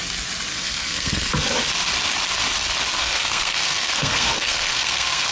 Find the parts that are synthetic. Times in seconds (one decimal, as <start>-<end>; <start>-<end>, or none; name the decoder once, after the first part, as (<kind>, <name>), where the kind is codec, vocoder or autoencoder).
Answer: 0.5-1.3 (codec, SNAC); 3.0-5.3